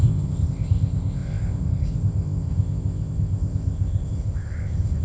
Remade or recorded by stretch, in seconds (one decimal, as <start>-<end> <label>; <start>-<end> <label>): 0.0-5.0 remade